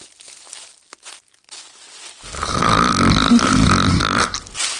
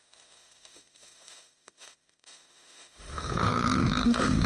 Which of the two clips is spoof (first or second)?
second